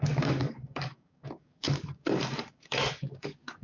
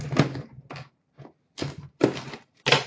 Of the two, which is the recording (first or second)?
second